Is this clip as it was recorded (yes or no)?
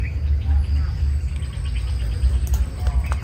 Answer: yes